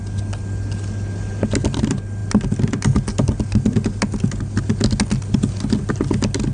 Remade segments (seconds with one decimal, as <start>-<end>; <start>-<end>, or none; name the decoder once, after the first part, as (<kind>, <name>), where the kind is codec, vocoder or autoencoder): none